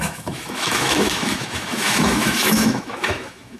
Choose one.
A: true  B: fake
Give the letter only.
B